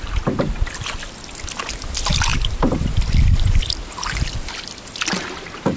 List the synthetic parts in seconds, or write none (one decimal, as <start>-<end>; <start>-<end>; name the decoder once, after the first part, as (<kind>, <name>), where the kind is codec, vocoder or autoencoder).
none